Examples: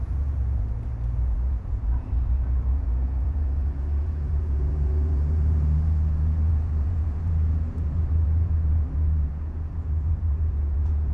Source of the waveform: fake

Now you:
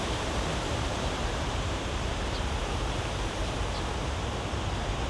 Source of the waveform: fake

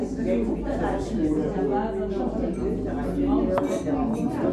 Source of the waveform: real